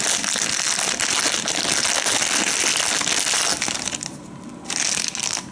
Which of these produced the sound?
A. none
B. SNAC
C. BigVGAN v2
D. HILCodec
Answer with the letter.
A